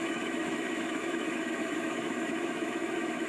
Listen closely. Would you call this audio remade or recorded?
remade